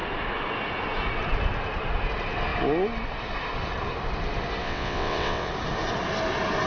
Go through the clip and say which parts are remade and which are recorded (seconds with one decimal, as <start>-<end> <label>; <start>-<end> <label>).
0.0-4.6 recorded; 4.6-5.5 remade; 5.5-6.7 recorded